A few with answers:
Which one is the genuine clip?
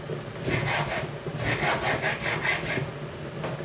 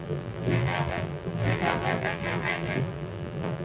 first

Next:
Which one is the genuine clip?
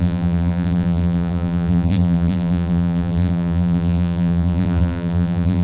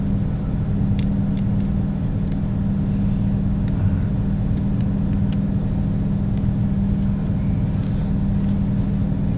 second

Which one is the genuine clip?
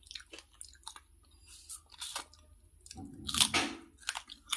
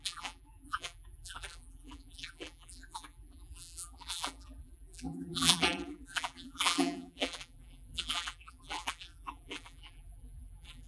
first